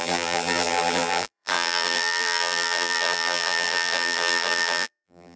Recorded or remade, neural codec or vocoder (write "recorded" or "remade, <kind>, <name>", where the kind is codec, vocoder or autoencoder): remade, vocoder, BigVGAN v2